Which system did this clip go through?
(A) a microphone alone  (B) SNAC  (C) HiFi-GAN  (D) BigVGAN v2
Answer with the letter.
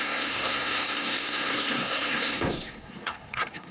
B